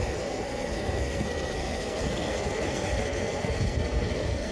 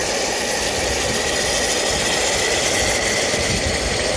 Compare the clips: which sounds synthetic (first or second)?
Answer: first